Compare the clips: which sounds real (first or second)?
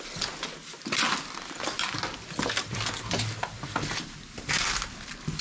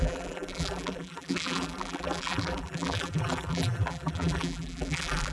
first